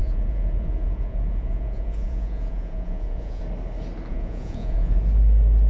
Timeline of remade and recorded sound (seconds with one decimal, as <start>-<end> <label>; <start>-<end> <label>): 0.0-3.4 remade; 3.4-4.1 recorded; 4.1-5.2 remade; 5.2-5.7 recorded